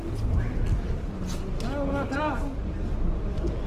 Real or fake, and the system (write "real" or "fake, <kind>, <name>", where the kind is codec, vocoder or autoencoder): real